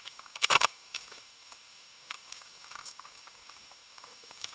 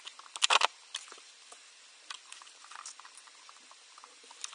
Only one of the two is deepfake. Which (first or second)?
first